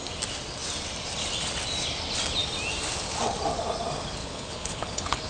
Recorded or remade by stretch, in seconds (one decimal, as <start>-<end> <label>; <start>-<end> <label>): 0.0-4.2 recorded; 4.2-5.3 remade

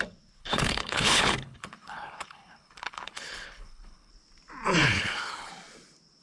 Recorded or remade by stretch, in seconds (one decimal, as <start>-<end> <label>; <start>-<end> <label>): 0.0-0.4 recorded; 0.4-4.1 remade; 4.1-4.8 recorded; 4.8-5.5 remade; 5.5-6.2 recorded